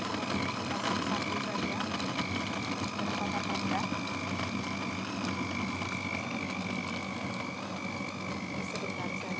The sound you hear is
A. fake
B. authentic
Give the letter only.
B